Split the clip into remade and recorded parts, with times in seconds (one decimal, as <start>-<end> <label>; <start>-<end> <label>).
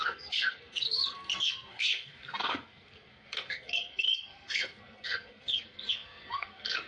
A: 0.0-6.9 remade